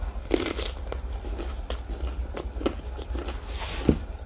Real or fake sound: real